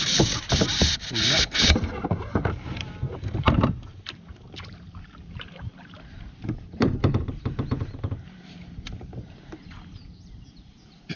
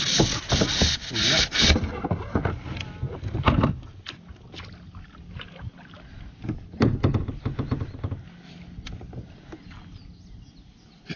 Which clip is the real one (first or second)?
second